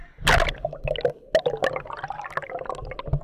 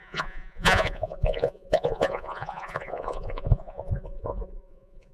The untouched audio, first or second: first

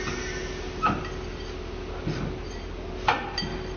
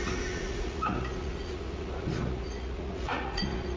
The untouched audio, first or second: first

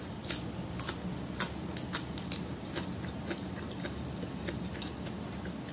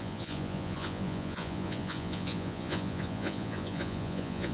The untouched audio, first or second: first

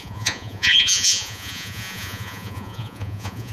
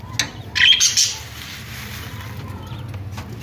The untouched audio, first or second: second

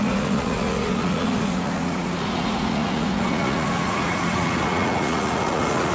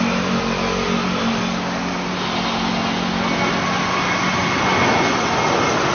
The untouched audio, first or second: second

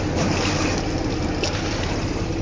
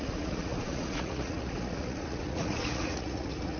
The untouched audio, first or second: first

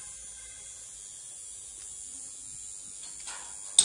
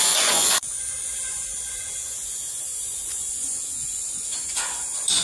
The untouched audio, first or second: first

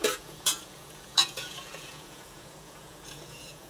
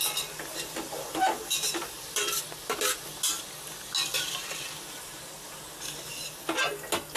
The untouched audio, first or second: second